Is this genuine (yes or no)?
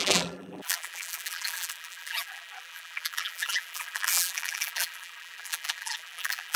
no